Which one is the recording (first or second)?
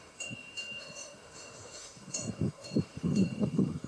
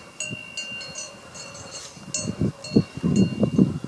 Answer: second